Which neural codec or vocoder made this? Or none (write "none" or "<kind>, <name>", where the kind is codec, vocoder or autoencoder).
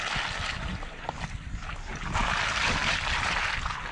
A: none